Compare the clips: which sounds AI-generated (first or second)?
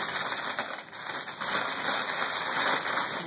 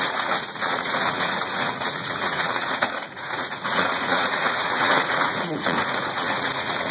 second